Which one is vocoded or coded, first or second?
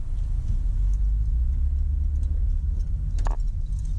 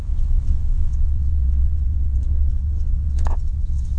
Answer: second